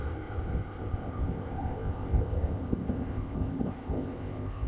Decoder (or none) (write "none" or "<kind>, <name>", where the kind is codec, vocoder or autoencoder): codec, ZipCodec